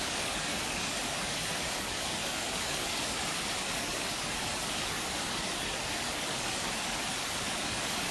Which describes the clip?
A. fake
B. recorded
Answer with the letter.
A